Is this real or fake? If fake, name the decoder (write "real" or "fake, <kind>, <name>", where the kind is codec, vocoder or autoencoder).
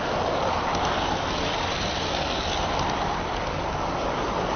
real